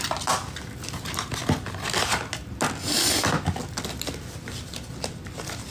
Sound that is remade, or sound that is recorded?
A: recorded